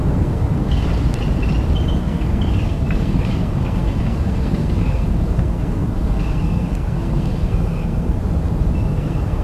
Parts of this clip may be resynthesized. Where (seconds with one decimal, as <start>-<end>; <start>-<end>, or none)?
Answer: 0.0-0.9; 2.0-8.2; 9.0-9.4